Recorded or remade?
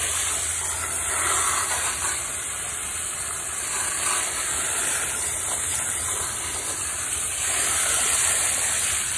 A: recorded